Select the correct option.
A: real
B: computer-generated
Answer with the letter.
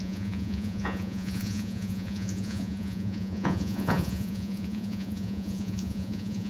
B